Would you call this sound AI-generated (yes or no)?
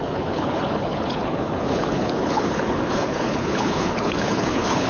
yes